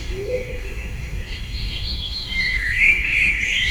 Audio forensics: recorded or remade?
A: remade